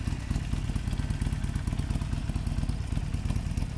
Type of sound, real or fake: real